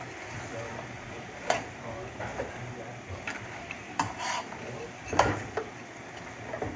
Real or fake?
real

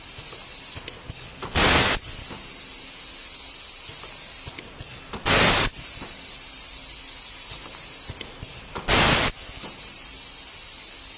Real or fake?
real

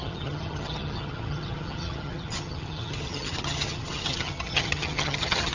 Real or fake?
fake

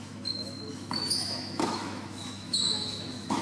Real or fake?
fake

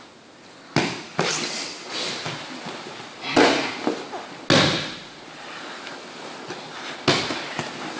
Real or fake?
real